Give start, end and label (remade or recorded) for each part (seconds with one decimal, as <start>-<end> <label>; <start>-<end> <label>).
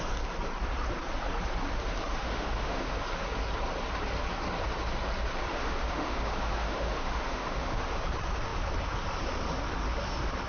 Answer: 0.0-2.1 recorded; 2.1-2.9 remade; 2.9-5.5 recorded; 5.5-7.8 remade; 7.8-10.5 recorded